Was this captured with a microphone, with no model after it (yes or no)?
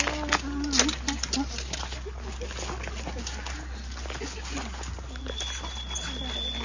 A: yes